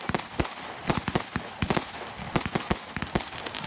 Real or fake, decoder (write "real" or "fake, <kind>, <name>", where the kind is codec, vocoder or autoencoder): real